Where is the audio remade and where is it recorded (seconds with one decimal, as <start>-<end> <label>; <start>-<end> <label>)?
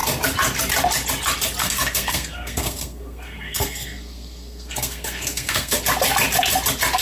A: 0.0-1.6 recorded; 1.6-5.8 remade; 5.8-7.0 recorded